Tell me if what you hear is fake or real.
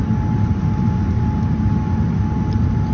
real